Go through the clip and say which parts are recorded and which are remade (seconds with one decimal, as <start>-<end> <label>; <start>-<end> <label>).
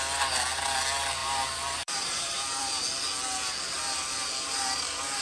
0.0-1.2 recorded; 1.2-2.8 remade; 2.8-5.2 recorded